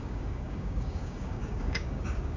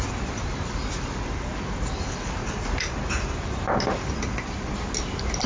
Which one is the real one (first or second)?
second